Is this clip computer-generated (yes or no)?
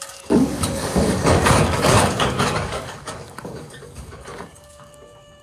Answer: yes